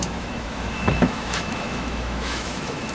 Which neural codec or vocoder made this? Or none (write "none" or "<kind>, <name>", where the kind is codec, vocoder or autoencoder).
autoencoder, DAC-VAE